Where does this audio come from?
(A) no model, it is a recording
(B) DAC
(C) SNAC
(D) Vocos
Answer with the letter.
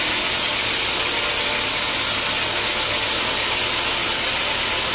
A